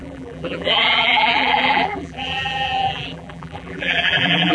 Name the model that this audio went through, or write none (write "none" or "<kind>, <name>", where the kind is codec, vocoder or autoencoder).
vocoder, BigVGAN v2